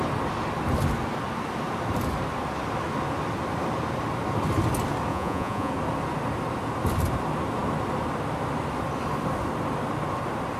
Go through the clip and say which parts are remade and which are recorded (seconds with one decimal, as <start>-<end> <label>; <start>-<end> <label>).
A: 0.0-5.1 recorded; 5.1-5.7 remade; 5.7-10.6 recorded